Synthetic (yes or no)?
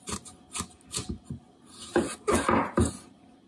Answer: no